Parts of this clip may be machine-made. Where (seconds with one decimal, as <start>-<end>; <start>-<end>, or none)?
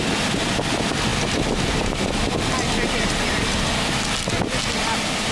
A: none